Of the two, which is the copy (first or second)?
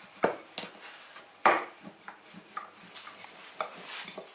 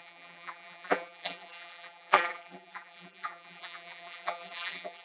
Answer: second